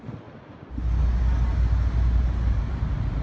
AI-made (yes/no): no